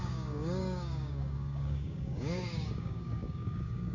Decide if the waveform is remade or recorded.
remade